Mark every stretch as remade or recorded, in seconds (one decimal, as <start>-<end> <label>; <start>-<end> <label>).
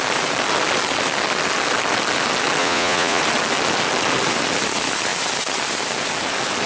0.0-2.6 recorded; 2.6-3.2 remade; 3.2-6.7 recorded